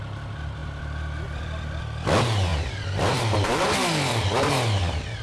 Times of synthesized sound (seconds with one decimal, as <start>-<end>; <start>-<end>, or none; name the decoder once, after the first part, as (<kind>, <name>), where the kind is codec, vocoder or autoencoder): 0.6-1.8 (vocoder, BigVGAN v2); 2.5-4.5